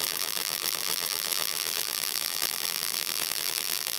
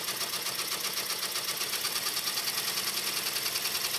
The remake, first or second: first